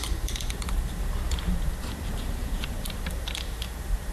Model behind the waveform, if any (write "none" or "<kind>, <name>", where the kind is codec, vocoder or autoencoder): vocoder, BigVGAN v2